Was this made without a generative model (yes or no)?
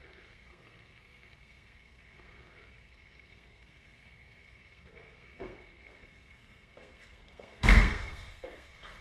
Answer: no